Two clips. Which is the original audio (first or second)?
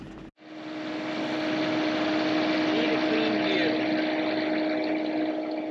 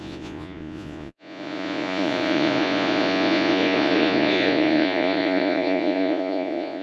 first